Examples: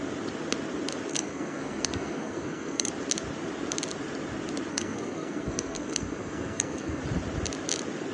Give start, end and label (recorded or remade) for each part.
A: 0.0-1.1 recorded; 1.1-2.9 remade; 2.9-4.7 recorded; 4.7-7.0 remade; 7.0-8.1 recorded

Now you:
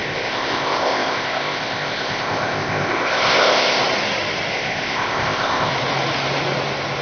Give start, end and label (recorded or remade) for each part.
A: 0.0-3.8 remade; 3.8-4.5 recorded; 4.5-5.7 remade; 5.7-7.0 recorded

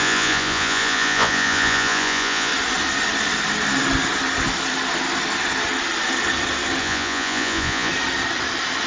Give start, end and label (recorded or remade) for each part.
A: 0.0-2.5 remade; 2.5-6.8 recorded; 6.8-7.9 remade; 7.9-8.9 recorded

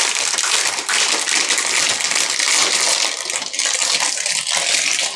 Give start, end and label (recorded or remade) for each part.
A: 0.0-5.2 recorded